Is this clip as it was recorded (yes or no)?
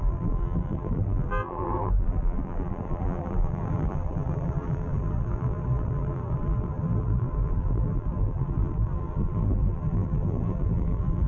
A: no